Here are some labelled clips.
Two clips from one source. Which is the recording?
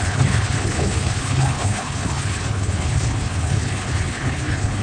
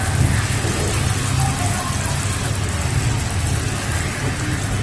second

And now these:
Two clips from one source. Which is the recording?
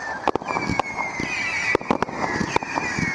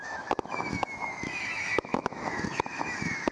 first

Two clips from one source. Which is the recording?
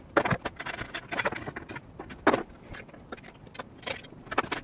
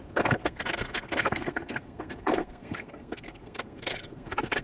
first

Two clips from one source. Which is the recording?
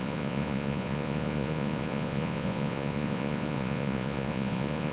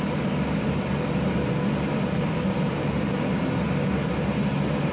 second